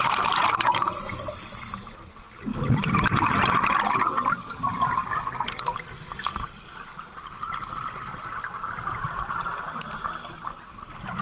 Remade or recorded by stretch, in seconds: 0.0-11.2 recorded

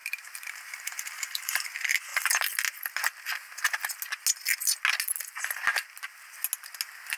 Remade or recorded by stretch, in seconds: 0.0-1.7 remade; 1.7-7.2 recorded

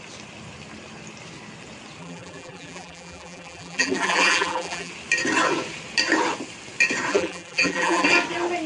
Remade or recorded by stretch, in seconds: 0.0-2.0 recorded; 2.0-4.9 remade; 4.9-7.1 recorded; 7.1-8.1 remade; 8.1-8.7 recorded